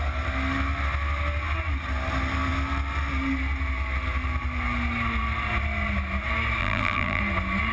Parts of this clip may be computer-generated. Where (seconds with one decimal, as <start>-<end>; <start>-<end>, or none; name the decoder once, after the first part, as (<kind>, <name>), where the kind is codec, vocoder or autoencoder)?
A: 6.6-7.2 (vocoder, BigVGAN v2)